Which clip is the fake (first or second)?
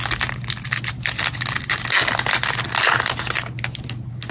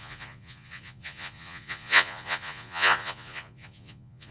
second